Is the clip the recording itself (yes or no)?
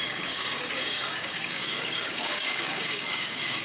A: no